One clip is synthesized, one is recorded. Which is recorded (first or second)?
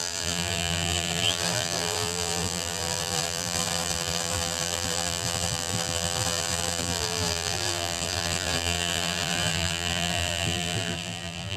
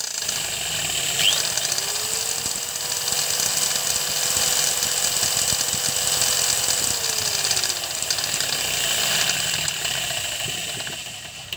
second